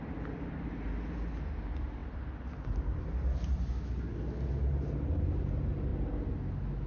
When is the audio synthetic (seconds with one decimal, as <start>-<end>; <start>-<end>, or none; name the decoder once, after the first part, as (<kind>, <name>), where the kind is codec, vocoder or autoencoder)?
none